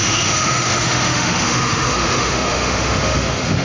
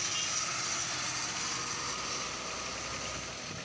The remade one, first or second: first